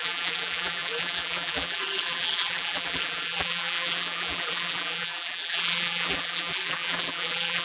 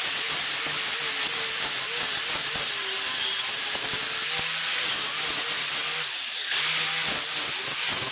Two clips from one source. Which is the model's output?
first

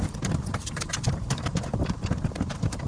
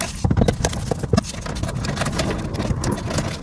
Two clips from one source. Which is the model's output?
first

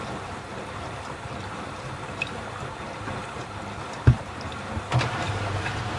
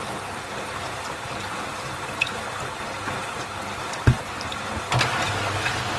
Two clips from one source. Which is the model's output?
first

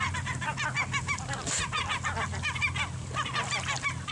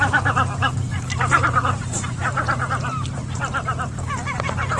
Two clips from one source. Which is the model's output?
second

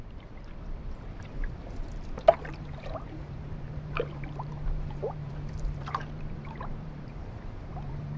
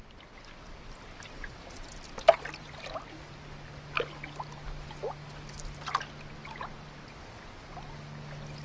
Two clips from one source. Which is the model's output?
first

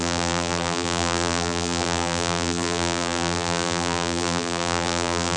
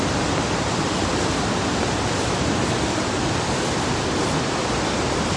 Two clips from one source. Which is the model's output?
first